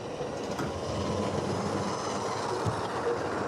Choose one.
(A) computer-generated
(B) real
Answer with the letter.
B